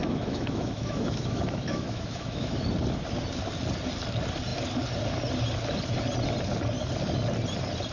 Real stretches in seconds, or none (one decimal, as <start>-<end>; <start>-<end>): 2.6-7.9